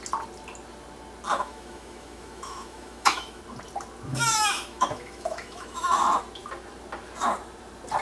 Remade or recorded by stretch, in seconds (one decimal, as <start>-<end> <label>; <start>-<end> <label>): 0.0-1.3 recorded; 1.3-3.4 remade; 3.4-4.1 recorded; 4.1-6.0 remade; 6.0-8.0 recorded